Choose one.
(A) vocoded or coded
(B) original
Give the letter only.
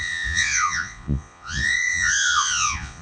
A